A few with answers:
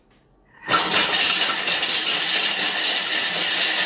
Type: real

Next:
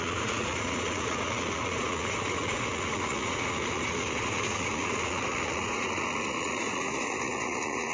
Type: fake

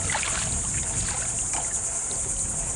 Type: real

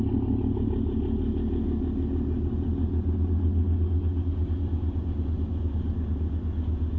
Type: real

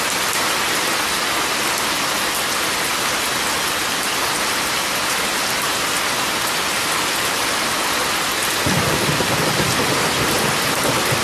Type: real